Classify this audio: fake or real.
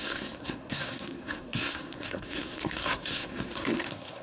fake